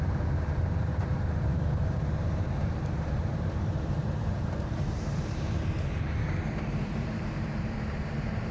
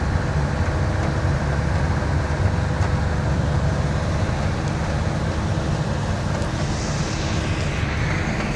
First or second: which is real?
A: second